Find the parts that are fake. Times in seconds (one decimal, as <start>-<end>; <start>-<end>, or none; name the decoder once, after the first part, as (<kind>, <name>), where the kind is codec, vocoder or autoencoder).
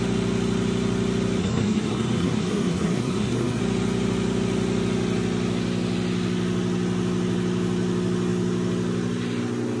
1.4-3.6 (codec, SNAC)